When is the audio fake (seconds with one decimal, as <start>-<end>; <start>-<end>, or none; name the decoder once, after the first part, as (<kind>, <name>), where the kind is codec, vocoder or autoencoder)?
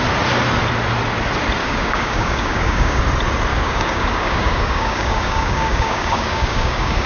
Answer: 1.6-3.0 (codec, DAC); 3.5-7.1